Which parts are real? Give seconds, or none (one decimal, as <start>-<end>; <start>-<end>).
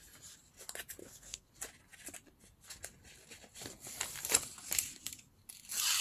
0.0-1.0; 1.5-6.0